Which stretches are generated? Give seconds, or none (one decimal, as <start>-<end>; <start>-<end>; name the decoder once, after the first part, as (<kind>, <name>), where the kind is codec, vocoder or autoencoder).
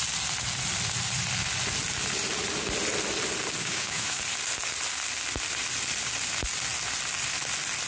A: 3.6-4.2 (autoencoder, DAC-VAE)